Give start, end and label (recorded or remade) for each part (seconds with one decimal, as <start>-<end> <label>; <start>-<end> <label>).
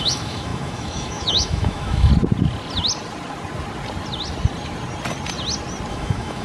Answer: 0.0-2.1 remade; 2.1-5.9 recorded; 5.9-6.4 remade